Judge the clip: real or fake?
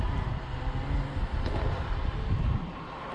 real